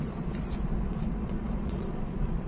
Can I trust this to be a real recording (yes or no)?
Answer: no